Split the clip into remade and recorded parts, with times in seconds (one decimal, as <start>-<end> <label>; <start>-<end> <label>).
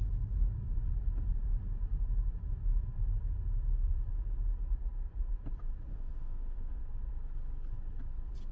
0.0-5.9 recorded; 5.9-6.8 remade; 6.8-8.5 recorded